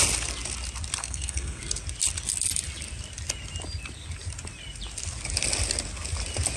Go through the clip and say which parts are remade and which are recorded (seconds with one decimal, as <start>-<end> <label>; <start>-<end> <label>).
0.0-1.0 recorded; 1.0-1.6 remade; 1.6-6.6 recorded